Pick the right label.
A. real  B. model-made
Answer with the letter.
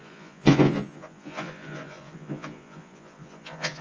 B